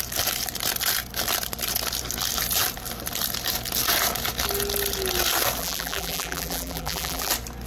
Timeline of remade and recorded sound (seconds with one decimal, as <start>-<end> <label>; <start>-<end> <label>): 0.0-5.6 recorded; 5.6-7.3 remade; 7.3-7.7 recorded